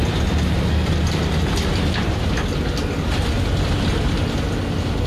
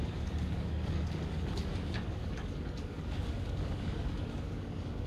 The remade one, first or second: second